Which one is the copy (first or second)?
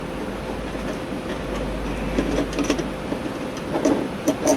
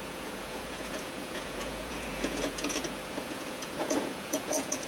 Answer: second